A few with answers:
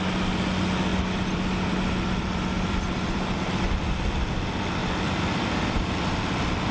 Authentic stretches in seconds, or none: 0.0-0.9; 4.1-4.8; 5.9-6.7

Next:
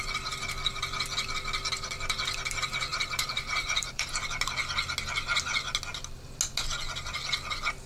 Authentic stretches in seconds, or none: 0.0-2.9; 4.1-7.9

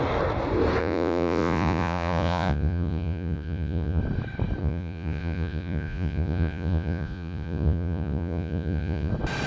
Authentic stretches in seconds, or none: 0.0-0.8; 4.0-4.6; 9.1-9.5

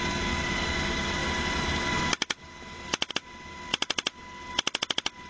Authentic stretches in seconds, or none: 0.0-5.3

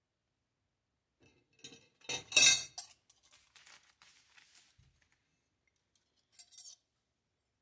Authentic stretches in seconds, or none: 0.0-7.6